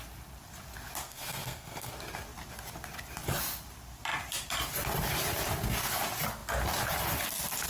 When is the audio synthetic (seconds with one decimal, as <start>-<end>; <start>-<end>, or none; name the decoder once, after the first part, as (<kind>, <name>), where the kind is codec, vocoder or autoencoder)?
1.0-1.9 (codec, SNAC)